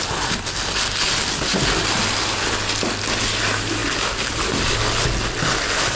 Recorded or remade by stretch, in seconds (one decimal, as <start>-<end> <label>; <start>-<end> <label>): 0.0-6.0 recorded